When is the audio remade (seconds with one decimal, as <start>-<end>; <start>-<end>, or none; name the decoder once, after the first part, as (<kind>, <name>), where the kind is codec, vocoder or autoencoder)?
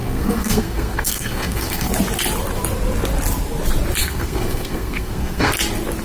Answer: 0.0-1.9 (codec, SNAC); 4.0-5.5